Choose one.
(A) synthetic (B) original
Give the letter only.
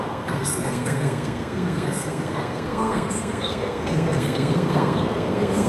A